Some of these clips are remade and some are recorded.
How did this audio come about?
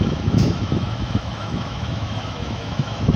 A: remade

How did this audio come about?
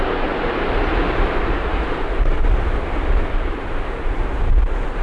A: remade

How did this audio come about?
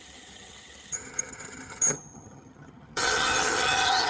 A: remade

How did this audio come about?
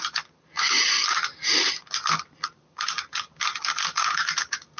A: recorded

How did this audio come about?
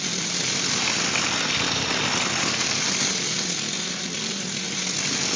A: remade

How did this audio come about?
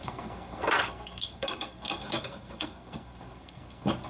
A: remade